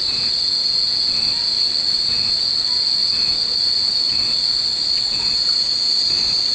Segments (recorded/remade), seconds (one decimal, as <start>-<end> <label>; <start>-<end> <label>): 0.0-3.0 recorded; 3.0-5.8 remade; 5.8-6.5 recorded